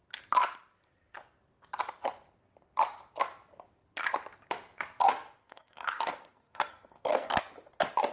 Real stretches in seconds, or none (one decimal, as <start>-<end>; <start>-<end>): 0.0-5.4; 7.4-8.1